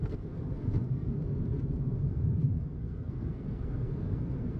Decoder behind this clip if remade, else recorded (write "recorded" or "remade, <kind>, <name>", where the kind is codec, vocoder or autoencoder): remade, codec, SNAC